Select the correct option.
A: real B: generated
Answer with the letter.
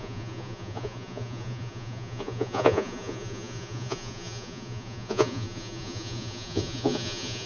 B